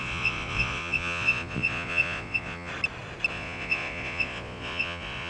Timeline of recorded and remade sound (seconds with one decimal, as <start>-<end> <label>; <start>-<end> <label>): 0.0-2.7 remade; 2.7-3.3 recorded; 3.3-5.3 remade